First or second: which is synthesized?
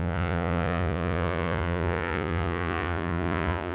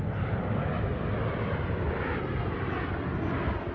first